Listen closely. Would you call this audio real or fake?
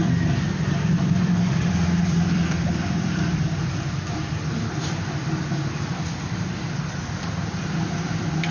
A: fake